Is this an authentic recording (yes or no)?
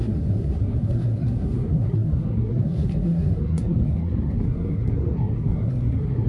no